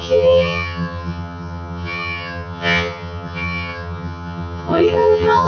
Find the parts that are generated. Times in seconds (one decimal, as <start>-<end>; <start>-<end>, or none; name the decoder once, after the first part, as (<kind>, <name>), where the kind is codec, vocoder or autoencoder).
0.0-5.5 (vocoder, HiFi-GAN)